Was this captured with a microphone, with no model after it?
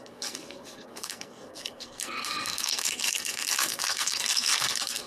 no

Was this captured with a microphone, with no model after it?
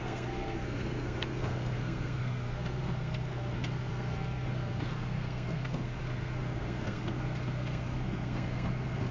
no